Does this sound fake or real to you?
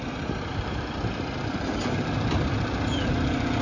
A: real